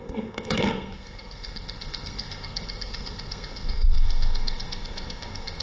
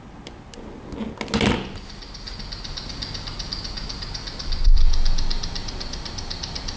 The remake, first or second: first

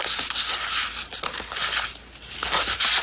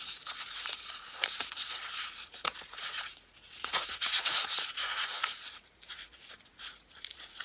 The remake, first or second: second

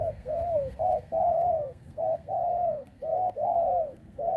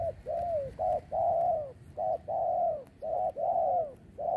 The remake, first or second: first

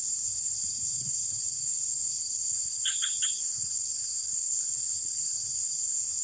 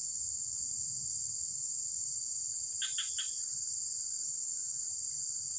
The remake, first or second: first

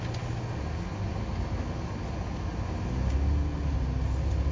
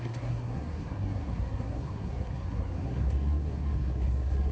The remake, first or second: second